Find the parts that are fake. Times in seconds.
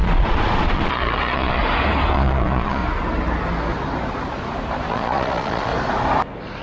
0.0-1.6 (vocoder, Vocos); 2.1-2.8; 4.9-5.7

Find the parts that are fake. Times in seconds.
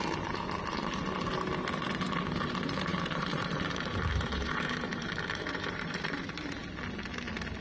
2.9-6.3 (vocoder, BigVGAN v2)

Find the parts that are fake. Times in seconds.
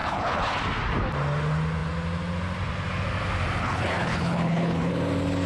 0.0-0.6 (codec, HILCodec); 3.6-4.9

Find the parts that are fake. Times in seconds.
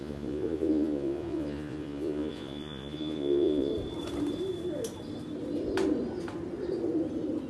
0.0-3.7 (vocoder, Vocos)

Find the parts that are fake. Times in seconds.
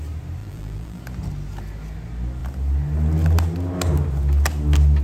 0.4-1.0 (vocoder, BigVGAN v2)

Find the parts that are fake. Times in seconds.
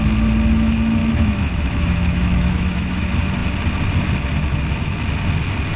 1.0-3.0 (autoencoder, DAC-VAE)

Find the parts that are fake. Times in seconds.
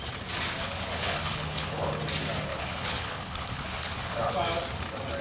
0.6-1.9 (codec, HILCodec); 2.5-4.3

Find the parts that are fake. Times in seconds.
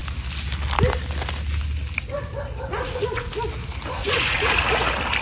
2.7-3.3 (vocoder, Vocos); 4.0-4.6